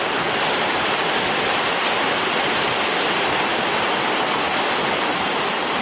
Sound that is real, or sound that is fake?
real